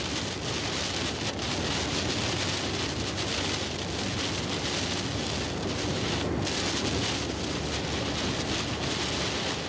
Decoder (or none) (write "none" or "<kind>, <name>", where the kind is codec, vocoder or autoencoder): none